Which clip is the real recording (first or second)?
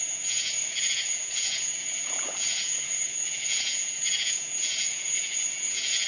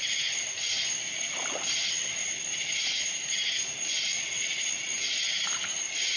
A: second